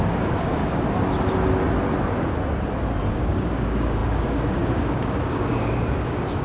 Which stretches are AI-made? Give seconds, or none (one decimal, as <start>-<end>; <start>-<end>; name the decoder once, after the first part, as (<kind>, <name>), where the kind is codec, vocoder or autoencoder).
0.0-0.6 (codec, DAC); 3.1-6.4